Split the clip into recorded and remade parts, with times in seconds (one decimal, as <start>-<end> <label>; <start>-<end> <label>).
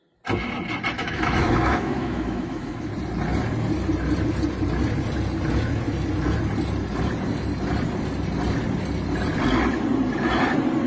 0.0-1.0 recorded; 1.0-2.9 remade; 2.9-10.9 recorded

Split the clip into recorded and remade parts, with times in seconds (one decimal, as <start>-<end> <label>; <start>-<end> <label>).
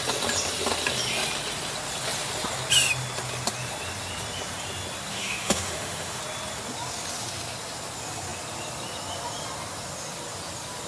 0.0-5.1 recorded; 5.1-6.2 remade; 6.2-10.9 recorded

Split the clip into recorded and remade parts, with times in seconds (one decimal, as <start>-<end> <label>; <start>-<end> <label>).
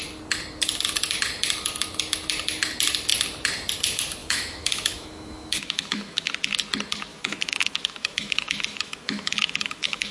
0.0-4.2 recorded; 4.2-6.3 remade; 6.3-7.1 recorded; 7.1-10.1 remade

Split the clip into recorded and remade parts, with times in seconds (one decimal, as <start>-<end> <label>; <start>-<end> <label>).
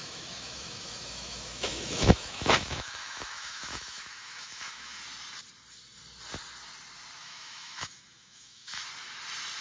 0.0-5.0 remade; 5.0-7.2 recorded; 7.2-8.8 remade; 8.8-9.6 recorded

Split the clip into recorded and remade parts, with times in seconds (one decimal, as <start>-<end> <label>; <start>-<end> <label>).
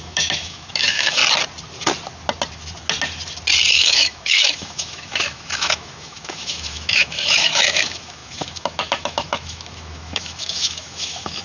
0.0-1.2 remade; 1.2-3.7 recorded; 3.7-11.4 remade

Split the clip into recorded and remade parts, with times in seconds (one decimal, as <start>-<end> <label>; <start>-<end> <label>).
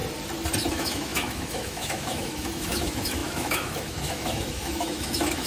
0.0-0.7 recorded; 0.7-5.5 remade